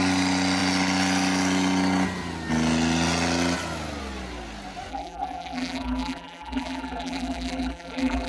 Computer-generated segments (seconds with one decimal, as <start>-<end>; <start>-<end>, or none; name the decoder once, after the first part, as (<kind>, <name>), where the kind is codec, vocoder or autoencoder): 4.9-8.3 (vocoder, BigVGAN v2)